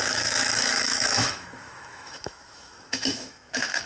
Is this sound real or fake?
fake